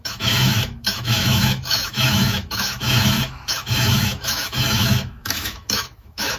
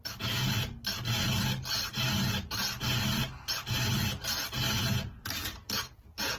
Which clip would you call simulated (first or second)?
first